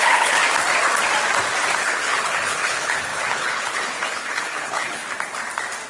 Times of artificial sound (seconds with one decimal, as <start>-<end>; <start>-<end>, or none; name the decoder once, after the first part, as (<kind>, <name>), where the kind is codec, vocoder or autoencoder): 0.0-0.4 (codec, HILCodec); 1.8-5.0